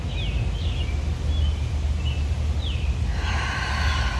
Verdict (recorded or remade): recorded